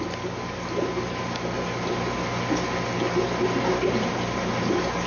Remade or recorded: recorded